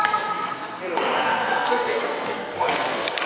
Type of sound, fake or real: fake